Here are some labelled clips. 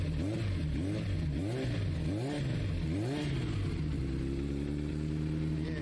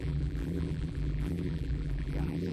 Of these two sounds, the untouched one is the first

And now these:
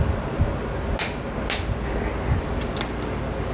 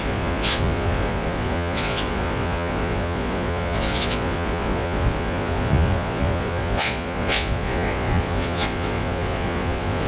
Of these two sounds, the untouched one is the first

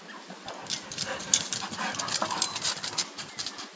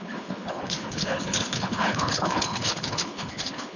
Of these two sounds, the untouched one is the first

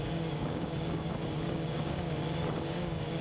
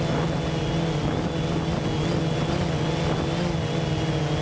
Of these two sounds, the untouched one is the second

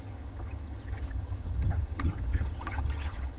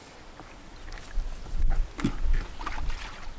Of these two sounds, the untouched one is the second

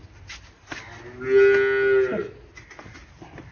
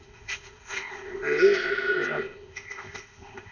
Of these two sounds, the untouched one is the first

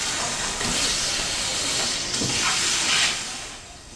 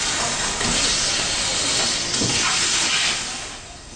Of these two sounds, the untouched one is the second